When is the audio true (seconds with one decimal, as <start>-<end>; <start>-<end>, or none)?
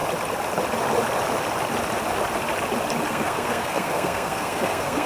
0.0-3.1